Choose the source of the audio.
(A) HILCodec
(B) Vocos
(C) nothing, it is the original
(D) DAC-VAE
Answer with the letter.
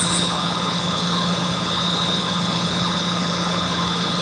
A